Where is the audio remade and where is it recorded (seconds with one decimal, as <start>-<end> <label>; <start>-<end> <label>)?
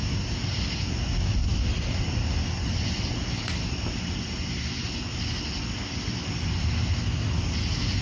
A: 0.0-1.4 recorded; 1.4-2.3 remade; 2.3-8.0 recorded